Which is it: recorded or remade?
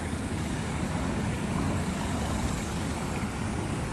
remade